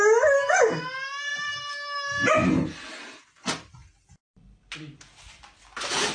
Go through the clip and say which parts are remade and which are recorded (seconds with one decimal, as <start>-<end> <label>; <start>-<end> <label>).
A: 0.0-6.1 recorded